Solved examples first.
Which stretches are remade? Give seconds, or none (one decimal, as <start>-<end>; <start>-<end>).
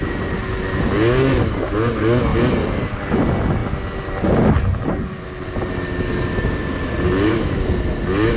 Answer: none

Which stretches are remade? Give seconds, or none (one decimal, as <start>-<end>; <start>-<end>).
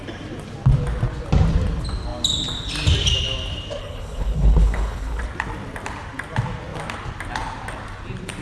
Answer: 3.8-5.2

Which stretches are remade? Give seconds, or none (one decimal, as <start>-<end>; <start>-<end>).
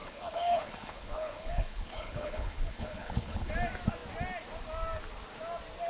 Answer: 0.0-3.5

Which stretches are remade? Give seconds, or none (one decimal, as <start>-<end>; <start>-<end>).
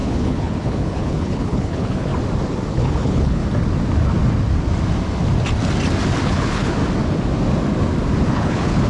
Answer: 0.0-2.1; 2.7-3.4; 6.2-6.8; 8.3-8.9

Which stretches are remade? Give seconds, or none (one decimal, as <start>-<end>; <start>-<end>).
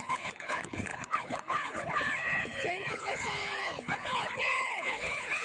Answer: 0.0-5.4